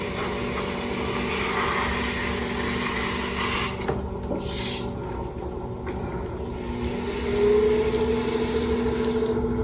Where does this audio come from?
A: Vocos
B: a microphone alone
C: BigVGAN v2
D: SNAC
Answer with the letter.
B